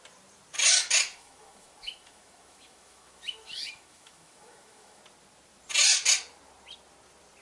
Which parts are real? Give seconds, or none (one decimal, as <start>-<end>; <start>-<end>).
0.0-1.1; 5.0-7.4